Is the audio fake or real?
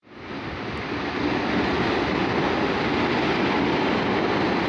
real